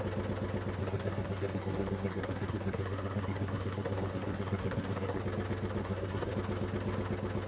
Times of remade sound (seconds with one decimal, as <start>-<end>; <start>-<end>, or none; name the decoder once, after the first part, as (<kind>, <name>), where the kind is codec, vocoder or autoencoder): 0.8-5.2 (codec, SNAC); 5.8-6.3